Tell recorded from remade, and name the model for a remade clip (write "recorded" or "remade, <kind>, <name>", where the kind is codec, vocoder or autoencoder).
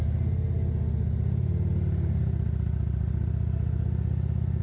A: recorded